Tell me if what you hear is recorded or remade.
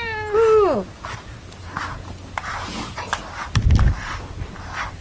recorded